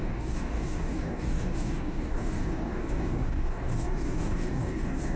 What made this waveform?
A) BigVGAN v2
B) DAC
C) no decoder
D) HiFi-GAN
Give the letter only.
B